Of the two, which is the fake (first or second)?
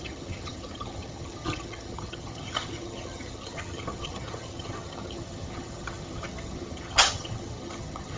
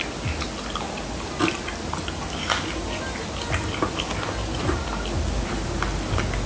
first